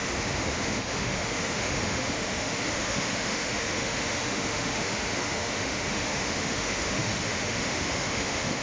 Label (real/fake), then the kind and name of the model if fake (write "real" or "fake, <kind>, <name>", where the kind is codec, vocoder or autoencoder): fake, autoencoder, DAC-VAE